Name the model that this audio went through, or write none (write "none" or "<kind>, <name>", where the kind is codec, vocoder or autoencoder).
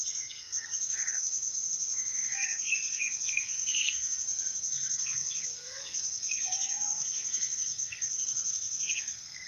codec, SNAC